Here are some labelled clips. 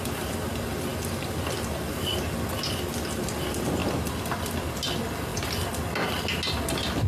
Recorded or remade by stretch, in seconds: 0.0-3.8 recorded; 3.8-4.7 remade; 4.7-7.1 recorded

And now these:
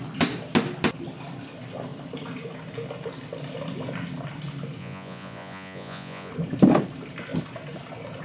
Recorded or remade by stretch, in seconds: 0.0-4.8 recorded; 4.8-6.3 remade; 6.3-8.2 recorded

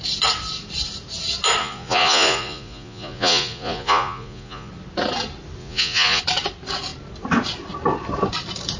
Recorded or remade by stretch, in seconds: 0.0-1.6 recorded; 1.6-4.7 remade; 4.7-5.6 recorded; 5.6-6.2 remade; 6.2-8.8 recorded

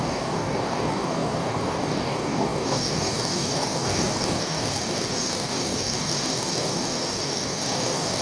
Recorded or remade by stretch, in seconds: 0.0-8.2 remade

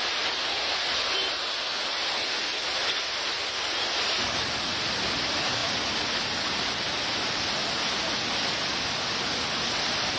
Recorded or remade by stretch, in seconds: 0.0-10.2 recorded

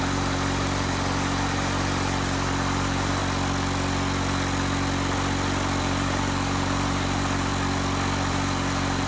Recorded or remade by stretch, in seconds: 0.0-3.2 remade; 3.2-5.8 recorded; 5.8-7.5 remade; 7.5-8.3 recorded; 8.3-9.1 remade